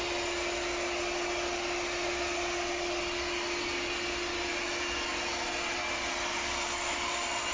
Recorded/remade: recorded